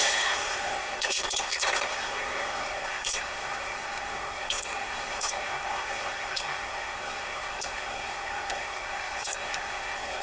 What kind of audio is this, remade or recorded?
remade